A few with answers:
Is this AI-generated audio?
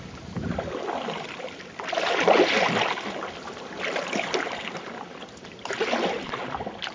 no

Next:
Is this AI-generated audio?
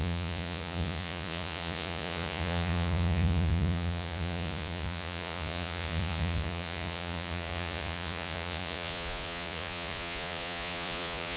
yes